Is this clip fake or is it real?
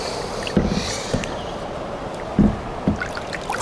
real